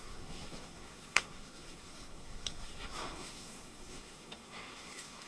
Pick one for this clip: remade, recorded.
remade